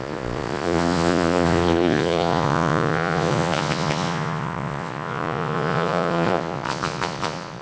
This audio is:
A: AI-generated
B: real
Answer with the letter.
A